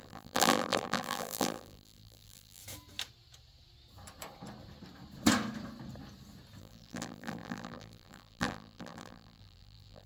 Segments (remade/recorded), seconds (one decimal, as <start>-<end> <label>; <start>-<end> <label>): 0.0-2.6 remade; 2.6-6.6 recorded; 6.6-10.1 remade